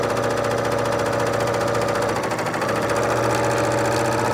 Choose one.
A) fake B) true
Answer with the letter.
B